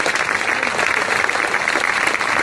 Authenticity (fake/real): real